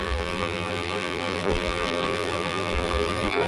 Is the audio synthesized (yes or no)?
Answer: yes